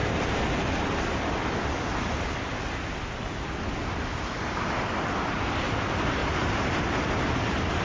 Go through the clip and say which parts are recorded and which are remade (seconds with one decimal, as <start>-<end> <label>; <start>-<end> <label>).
0.0-6.2 recorded; 6.2-7.8 remade